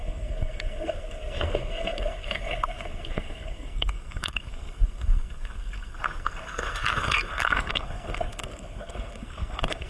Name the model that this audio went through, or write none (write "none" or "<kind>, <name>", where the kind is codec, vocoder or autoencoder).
codec, SNAC